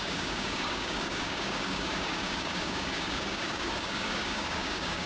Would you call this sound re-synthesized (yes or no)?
yes